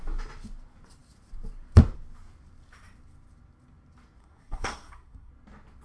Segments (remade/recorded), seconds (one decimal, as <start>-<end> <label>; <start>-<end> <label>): 0.0-4.2 recorded; 4.2-5.3 remade; 5.3-5.8 recorded